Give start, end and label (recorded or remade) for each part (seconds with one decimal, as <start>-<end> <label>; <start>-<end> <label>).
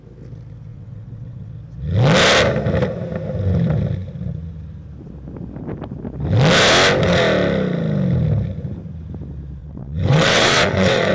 0.0-0.7 recorded; 0.7-1.5 remade; 1.5-9.6 recorded; 9.6-11.1 remade